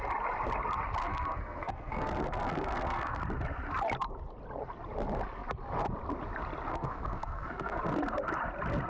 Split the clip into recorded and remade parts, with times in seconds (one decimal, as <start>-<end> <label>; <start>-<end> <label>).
0.0-1.0 recorded; 1.0-3.2 remade; 3.2-6.7 recorded; 6.7-7.8 remade; 7.8-8.9 recorded